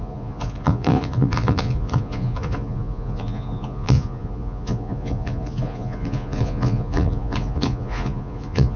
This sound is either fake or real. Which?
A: fake